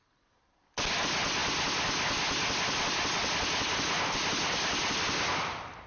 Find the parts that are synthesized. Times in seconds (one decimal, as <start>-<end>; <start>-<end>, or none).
none